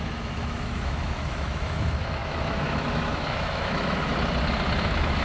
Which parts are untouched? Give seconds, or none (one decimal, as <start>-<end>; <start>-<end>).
4.1-4.8

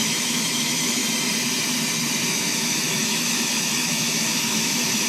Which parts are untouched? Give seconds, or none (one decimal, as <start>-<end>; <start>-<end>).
1.0-2.3

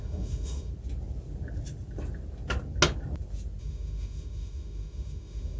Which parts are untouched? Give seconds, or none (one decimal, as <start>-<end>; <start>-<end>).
0.7-3.6

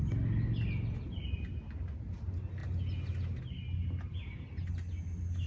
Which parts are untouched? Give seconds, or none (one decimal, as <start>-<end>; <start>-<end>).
0.0-5.5

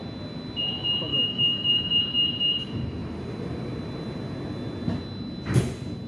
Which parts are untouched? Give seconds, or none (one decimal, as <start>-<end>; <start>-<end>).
0.0-1.1; 2.0-6.1

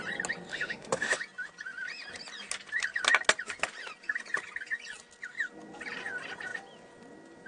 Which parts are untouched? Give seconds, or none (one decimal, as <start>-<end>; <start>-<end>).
0.0-0.5; 1.2-7.5